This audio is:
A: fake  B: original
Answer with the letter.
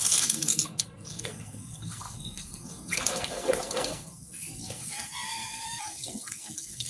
A